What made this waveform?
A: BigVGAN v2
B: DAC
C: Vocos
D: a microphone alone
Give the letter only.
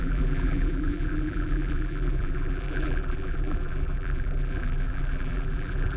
A